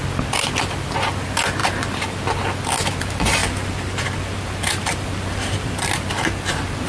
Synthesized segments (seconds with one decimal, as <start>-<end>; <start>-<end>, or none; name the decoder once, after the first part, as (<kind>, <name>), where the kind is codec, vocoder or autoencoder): 3.4-5.9 (vocoder, BigVGAN v2)